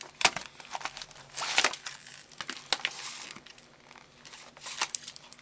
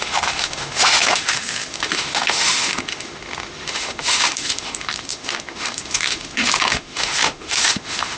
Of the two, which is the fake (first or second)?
second